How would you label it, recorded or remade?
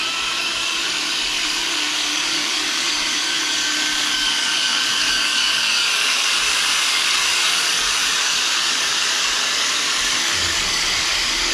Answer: remade